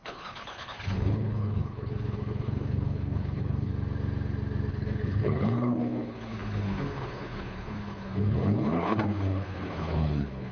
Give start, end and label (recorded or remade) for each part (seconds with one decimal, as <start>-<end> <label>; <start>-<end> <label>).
0.0-3.7 remade; 3.7-4.7 recorded; 4.7-10.5 remade